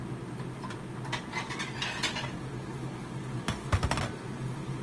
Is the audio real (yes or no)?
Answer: yes